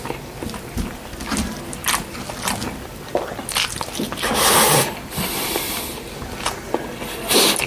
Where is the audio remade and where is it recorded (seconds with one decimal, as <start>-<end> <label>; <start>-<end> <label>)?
0.0-7.7 recorded